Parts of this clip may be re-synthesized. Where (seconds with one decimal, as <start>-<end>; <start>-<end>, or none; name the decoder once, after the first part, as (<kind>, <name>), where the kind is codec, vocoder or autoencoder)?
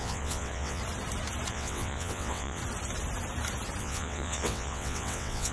0.0-0.8 (vocoder, WaveNeXt); 1.5-2.6; 3.8-5.5